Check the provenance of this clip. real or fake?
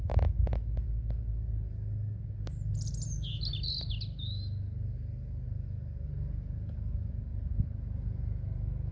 real